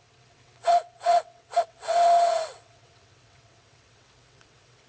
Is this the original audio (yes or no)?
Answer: no